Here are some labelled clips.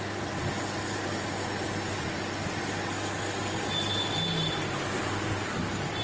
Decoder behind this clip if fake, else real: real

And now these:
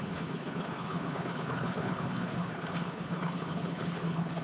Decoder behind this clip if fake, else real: fake, codec, HILCodec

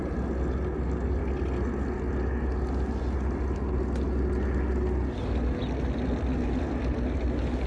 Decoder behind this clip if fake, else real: real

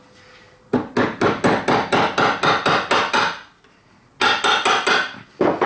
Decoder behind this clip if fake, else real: real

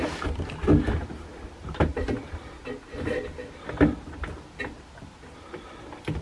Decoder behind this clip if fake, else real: real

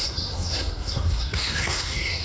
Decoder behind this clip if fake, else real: fake, codec, SNAC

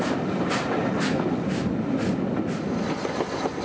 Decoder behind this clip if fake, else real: real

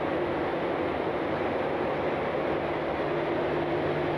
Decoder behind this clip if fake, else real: real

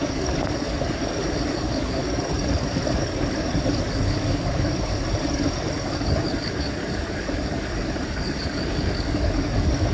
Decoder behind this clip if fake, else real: fake, codec, DAC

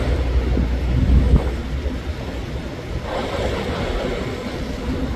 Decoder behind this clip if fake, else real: real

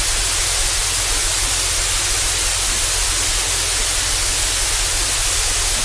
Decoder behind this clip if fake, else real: real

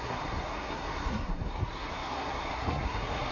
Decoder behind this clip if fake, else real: fake, codec, SNAC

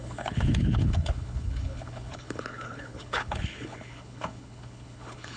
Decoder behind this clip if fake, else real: fake, codec, HILCodec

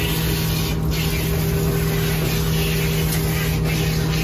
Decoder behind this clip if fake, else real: real